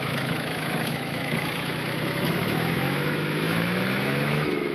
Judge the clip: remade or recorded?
remade